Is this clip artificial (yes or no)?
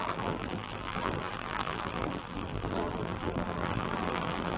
yes